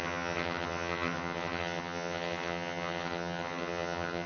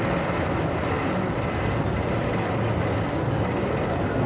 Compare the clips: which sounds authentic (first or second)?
second